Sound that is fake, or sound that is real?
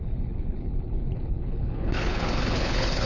fake